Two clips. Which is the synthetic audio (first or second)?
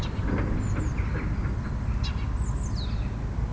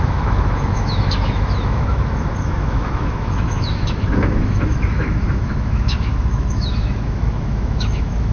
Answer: second